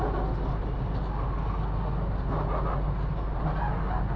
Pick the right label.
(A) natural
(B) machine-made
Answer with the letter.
A